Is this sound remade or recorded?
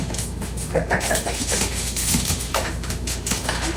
remade